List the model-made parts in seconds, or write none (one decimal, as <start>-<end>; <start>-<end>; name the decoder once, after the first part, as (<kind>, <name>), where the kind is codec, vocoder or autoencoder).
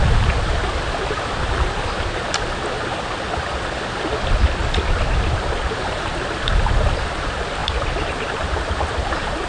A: none